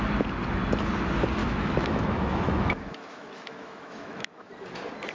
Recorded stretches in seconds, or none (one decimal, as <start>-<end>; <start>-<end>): 0.0-1.4; 4.5-5.1